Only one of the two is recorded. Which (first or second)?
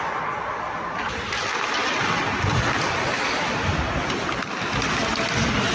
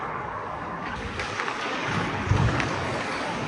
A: first